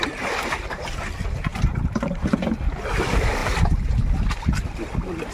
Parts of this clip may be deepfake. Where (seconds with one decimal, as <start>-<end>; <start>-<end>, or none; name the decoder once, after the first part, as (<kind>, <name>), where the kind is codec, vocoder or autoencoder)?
none